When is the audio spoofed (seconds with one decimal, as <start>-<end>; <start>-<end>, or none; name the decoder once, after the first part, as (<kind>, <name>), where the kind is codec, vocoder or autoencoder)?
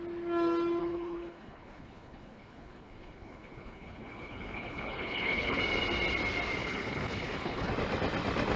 0.8-5.6 (codec, HILCodec); 6.6-7.7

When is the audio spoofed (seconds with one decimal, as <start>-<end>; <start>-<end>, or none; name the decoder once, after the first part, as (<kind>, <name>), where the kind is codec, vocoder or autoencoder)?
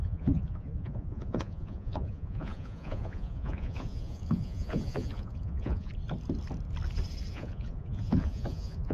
0.0-5.9 (vocoder, Vocos); 7.3-8.9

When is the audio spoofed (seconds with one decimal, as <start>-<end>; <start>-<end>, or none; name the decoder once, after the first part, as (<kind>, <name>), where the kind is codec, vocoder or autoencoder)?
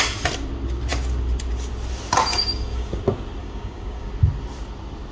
2.3-2.9 (codec, DAC); 3.4-4.1